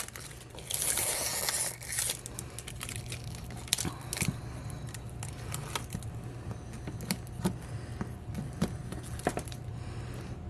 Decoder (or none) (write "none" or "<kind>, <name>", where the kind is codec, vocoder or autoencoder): none